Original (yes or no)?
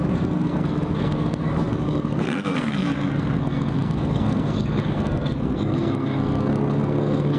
no